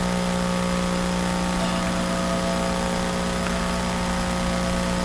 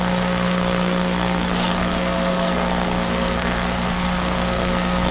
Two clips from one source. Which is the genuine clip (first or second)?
first